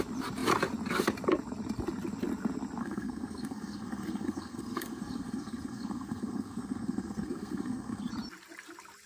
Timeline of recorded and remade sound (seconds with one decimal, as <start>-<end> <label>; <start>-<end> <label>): 0.0-2.8 recorded; 2.8-8.1 remade; 8.1-9.1 recorded